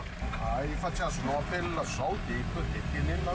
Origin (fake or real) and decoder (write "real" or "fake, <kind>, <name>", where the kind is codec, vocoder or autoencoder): real